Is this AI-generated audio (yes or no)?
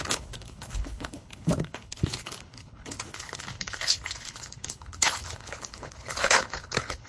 yes